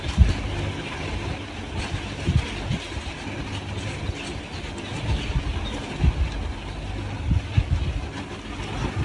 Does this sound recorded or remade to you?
recorded